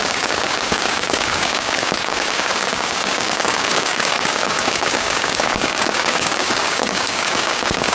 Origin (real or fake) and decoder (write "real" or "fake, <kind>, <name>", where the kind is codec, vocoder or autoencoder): fake, codec, DAC